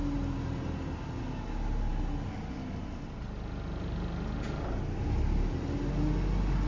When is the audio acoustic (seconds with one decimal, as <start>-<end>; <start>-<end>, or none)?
0.0-6.7